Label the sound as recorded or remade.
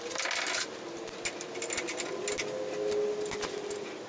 recorded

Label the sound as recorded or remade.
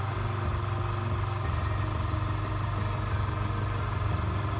recorded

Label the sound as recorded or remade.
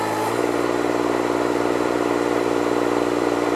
remade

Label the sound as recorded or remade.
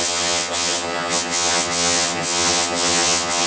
remade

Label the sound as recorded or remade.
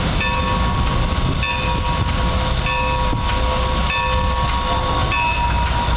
recorded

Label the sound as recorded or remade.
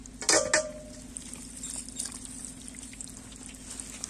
recorded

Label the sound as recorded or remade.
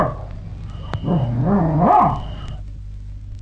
recorded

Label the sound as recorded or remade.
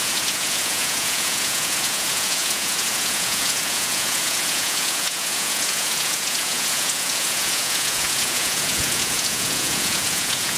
remade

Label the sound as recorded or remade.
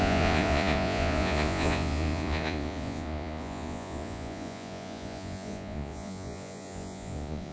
remade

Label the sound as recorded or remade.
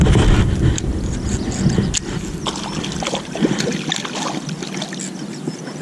recorded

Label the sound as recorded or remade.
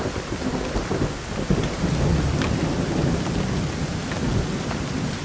recorded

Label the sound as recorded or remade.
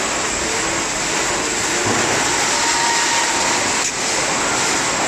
recorded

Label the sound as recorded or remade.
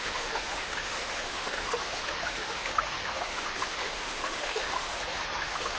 remade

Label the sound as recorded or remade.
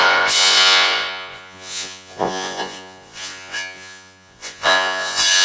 remade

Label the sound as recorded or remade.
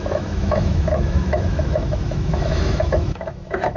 remade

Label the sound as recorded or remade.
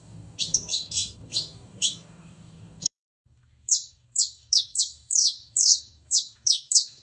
remade